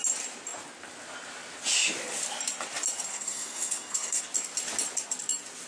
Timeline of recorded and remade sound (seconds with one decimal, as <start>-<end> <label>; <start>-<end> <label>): 0.0-3.1 recorded; 3.1-4.2 remade; 4.2-5.7 recorded